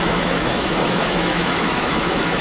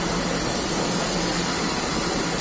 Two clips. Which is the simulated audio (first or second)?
first